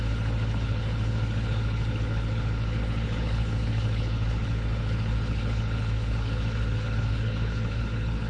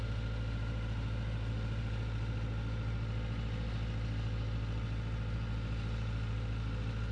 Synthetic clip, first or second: first